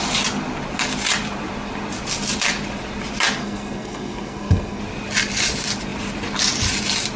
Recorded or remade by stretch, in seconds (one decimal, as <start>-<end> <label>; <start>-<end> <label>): 0.0-3.4 recorded; 3.4-4.8 remade; 4.8-7.2 recorded